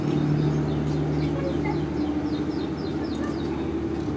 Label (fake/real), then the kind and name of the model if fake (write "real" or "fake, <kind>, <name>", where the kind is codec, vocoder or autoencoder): real